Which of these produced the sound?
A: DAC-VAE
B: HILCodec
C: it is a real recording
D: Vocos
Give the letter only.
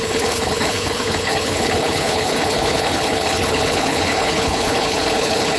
B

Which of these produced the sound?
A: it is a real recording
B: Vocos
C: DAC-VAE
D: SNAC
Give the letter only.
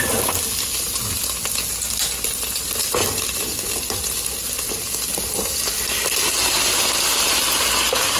A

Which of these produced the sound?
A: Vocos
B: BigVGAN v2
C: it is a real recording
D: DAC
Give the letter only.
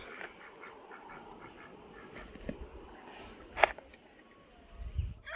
C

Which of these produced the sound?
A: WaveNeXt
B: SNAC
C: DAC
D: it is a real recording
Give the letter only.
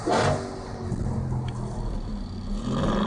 D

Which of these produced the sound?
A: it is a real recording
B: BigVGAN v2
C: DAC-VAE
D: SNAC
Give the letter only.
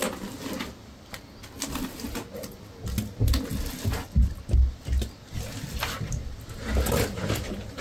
A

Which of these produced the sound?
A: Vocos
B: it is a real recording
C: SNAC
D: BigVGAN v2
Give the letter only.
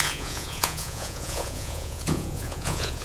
A